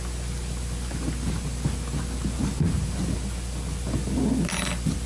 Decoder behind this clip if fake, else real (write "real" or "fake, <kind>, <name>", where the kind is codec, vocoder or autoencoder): real